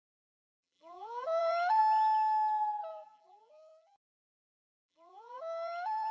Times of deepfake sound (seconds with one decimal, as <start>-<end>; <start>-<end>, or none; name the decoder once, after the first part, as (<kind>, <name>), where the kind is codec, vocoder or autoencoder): 0.0-1.8 (vocoder, BigVGAN v2); 2.9-6.1